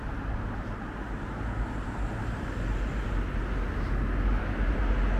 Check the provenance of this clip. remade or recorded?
recorded